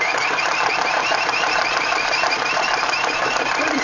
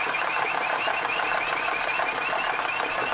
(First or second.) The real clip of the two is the second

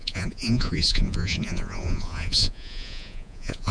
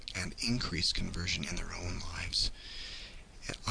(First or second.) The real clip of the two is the second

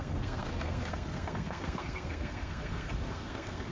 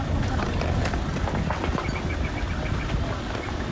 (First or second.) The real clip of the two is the second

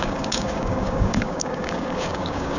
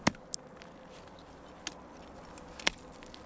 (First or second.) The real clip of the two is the second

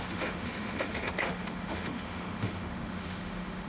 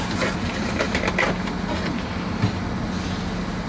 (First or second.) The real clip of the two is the second